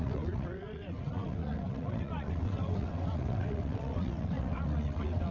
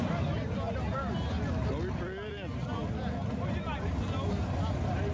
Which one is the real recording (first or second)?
second